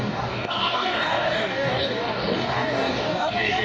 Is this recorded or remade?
remade